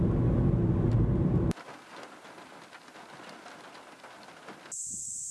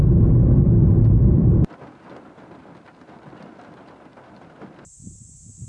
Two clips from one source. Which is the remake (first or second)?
second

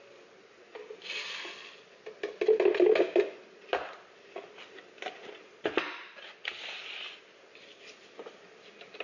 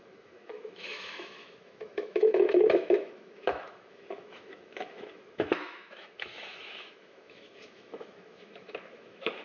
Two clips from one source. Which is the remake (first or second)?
second